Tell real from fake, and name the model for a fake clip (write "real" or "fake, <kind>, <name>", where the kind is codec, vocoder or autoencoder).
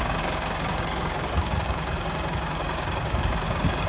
fake, codec, DAC